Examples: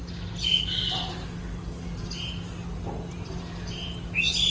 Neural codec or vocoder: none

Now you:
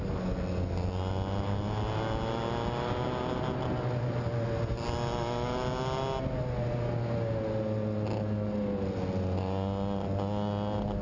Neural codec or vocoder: none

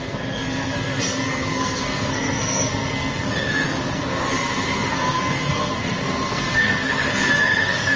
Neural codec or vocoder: codec, SNAC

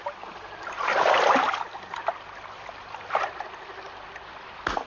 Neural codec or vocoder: none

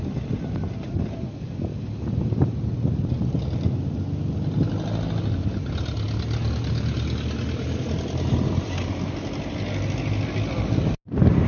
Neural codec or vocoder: none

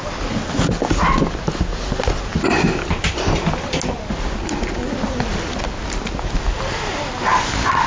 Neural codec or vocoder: none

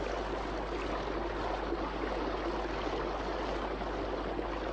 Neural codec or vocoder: none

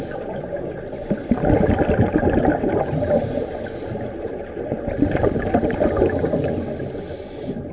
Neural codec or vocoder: none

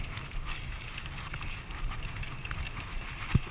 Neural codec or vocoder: none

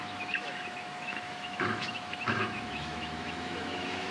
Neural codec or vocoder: autoencoder, DAC-VAE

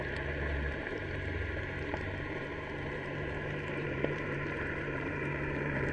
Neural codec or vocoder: vocoder, BigVGAN v2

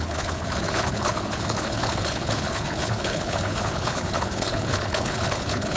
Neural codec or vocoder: codec, HILCodec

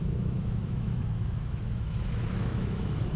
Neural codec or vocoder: autoencoder, DAC-VAE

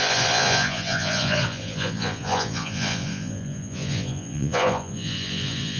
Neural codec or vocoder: vocoder, Vocos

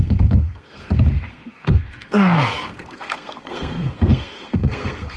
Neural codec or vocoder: codec, SNAC